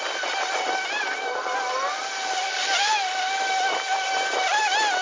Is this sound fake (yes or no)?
no